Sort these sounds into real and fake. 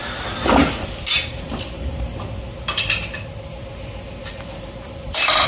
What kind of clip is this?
real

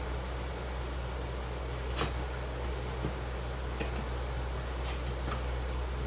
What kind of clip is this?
real